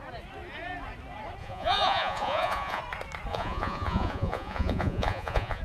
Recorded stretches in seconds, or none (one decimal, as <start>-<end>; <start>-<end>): 0.0-1.4; 2.8-3.3